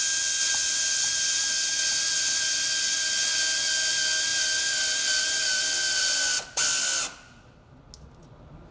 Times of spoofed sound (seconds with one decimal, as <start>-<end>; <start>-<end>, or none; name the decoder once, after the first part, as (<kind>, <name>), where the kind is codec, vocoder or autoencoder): none